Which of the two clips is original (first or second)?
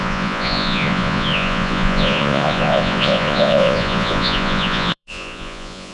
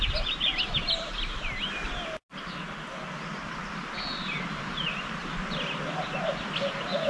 second